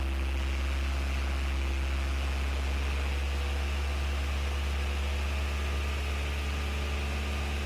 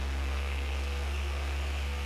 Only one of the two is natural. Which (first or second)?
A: first